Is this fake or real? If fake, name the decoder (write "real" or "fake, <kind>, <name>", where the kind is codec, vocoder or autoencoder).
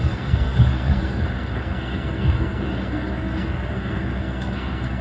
fake, codec, SNAC